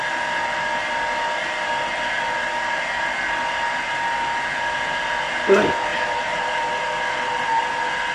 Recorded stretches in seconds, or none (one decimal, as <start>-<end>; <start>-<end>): 0.0-5.9; 6.4-8.1